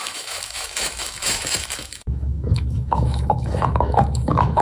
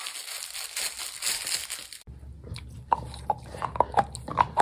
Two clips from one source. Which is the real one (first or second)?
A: second